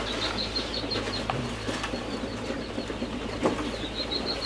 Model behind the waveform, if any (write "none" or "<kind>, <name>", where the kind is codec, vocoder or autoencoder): none